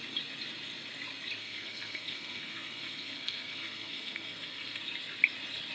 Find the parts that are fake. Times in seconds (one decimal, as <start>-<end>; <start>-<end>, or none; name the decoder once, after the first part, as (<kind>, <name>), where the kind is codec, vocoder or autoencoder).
1.4-4.8 (codec, SNAC)